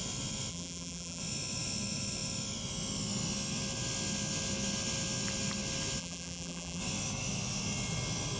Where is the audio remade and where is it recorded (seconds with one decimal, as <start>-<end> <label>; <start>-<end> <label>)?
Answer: 0.0-0.5 recorded; 0.5-1.2 remade; 1.2-6.0 recorded; 6.0-6.8 remade; 6.8-8.4 recorded